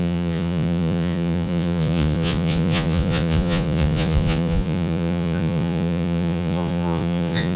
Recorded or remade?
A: remade